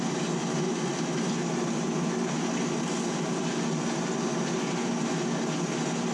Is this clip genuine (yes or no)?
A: yes